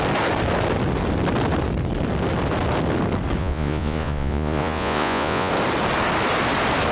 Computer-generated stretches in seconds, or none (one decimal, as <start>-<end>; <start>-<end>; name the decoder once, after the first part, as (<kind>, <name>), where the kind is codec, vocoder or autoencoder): 3.4-5.5 (vocoder, Vocos)